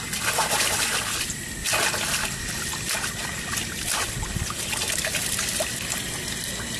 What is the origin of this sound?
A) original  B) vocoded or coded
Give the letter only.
A